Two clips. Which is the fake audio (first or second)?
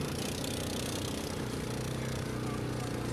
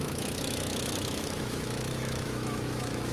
second